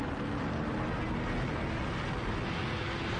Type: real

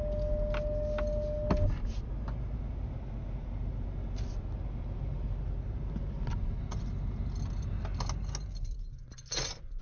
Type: real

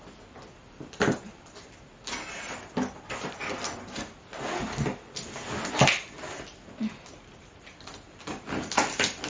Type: real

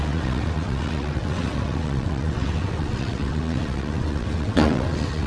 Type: fake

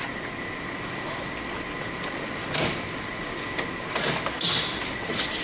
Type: fake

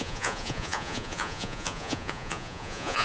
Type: fake